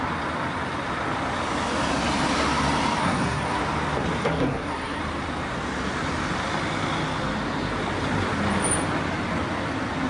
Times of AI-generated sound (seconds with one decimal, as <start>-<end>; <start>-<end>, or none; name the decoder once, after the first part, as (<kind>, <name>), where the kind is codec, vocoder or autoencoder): 3.0-3.6 (codec, SNAC); 4.2-5.0